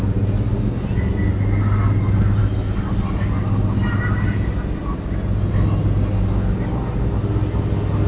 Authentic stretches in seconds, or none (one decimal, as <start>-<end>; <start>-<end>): 0.0-8.1